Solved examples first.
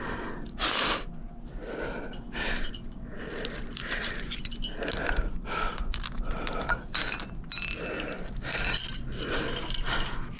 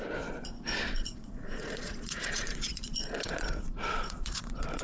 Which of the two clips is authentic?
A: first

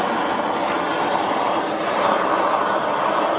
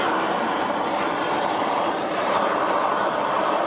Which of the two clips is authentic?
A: first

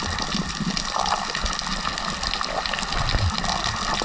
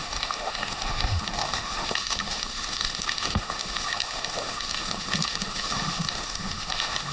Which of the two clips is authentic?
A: first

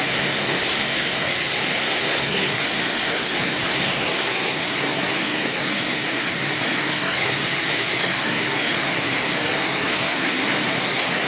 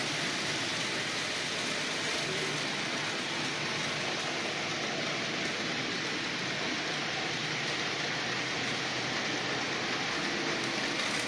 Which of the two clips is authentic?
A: second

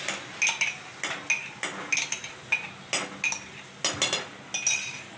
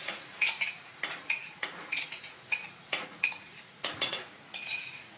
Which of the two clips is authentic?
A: first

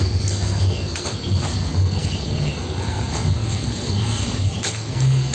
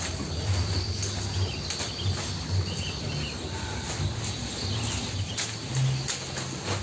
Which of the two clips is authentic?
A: second